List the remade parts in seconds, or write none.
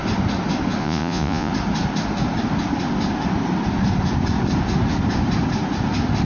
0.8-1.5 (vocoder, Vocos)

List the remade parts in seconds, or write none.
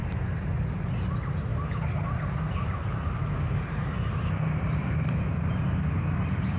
0.0-0.9 (vocoder, BigVGAN v2); 1.5-5.5